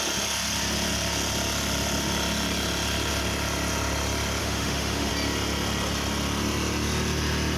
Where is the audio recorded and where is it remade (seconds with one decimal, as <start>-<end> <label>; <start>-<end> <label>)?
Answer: 0.0-4.4 recorded; 4.4-5.1 remade; 5.1-7.6 recorded